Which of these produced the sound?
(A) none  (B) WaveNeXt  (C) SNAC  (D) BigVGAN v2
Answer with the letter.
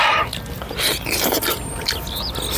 A